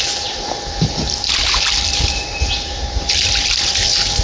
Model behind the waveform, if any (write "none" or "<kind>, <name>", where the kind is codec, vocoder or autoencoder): none